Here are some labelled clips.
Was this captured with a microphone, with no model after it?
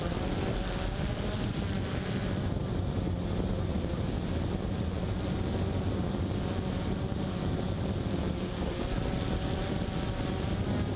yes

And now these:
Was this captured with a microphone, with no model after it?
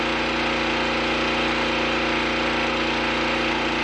yes